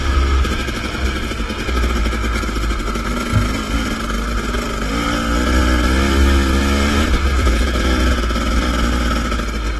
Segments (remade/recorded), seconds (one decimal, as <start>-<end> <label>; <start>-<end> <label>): 0.0-7.3 recorded; 7.3-8.2 remade; 8.2-9.8 recorded